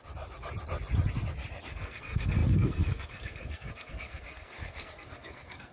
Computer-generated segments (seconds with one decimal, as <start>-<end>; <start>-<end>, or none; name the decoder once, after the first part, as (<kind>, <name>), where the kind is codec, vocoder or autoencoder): 1.7-5.7 (codec, SNAC)